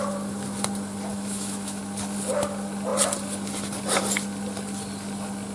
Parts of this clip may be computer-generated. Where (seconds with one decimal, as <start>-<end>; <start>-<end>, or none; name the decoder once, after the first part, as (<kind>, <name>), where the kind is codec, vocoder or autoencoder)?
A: 1.1-1.8 (autoencoder, DAC-VAE)